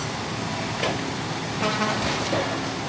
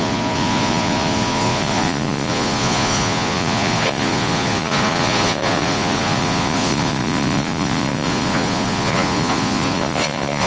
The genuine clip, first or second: first